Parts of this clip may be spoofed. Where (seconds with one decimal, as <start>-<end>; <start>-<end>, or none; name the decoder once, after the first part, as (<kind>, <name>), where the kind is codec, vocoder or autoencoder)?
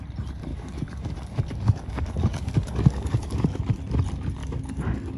0.5-3.6 (codec, DAC); 4.4-5.2